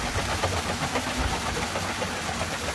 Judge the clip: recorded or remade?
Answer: recorded